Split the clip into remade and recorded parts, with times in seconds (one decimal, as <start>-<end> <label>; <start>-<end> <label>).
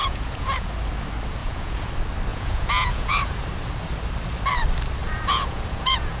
0.0-0.7 remade; 0.7-1.4 recorded; 1.4-1.9 remade; 1.9-2.3 recorded; 2.3-3.4 remade; 3.4-5.0 recorded; 5.0-6.2 remade